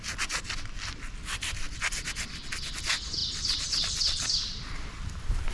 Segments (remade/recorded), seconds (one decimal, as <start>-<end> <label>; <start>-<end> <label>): 0.0-3.2 recorded; 3.2-5.5 remade